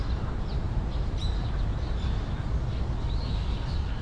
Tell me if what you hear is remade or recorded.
recorded